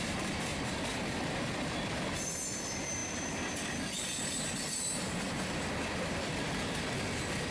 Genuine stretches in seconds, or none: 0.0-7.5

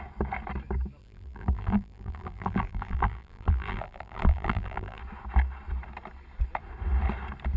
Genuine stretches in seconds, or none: 0.0-1.0; 5.0-7.6

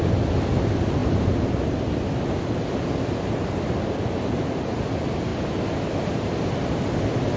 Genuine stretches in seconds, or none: 0.0-7.4

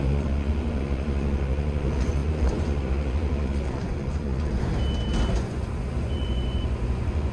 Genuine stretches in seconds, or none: 4.7-5.3